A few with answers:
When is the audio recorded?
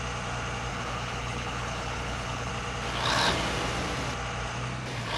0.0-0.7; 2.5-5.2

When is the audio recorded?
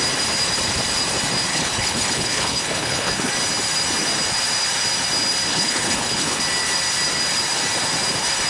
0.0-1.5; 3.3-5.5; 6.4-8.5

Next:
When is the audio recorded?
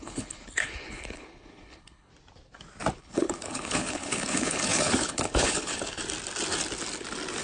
2.1-3.0; 6.0-7.4